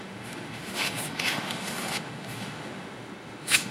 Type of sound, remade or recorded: remade